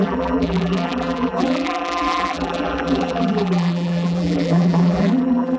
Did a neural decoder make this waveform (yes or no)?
yes